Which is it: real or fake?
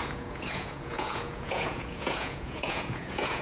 fake